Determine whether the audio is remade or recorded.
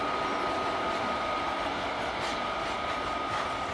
recorded